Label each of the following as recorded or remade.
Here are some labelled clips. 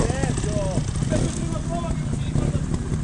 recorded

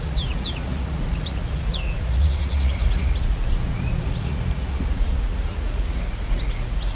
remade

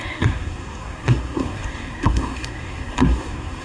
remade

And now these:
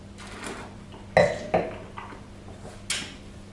recorded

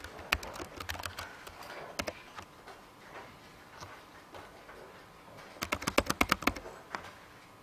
recorded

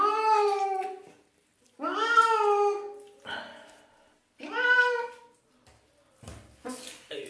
recorded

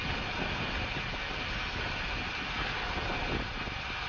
recorded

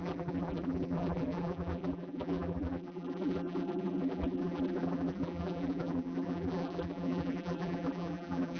remade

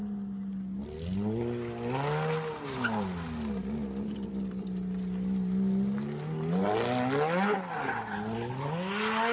recorded